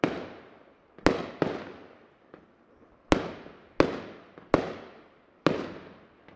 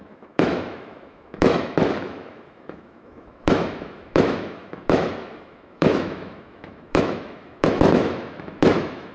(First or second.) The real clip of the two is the first